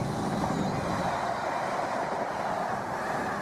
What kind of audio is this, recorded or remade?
recorded